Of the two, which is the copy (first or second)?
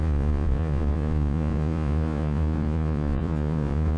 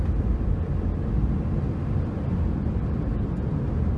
first